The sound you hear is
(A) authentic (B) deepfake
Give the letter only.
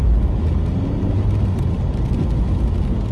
A